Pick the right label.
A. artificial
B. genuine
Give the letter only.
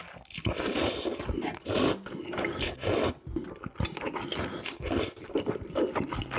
B